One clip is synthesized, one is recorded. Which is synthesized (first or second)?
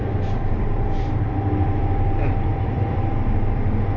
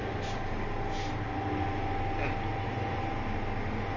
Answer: first